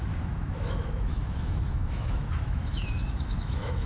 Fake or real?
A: fake